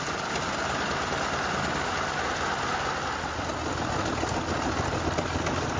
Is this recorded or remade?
recorded